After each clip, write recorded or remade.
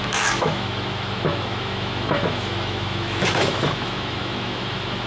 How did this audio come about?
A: remade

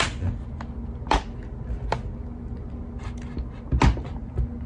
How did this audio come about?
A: recorded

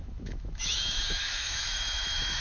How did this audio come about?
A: remade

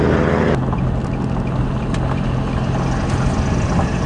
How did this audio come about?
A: recorded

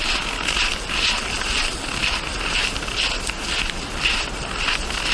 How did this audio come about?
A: recorded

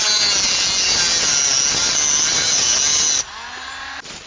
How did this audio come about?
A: recorded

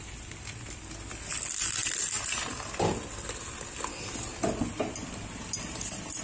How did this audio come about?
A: recorded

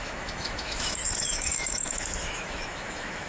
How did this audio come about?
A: remade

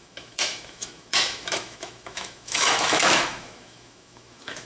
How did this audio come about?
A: remade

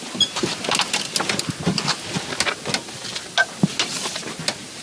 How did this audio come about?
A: recorded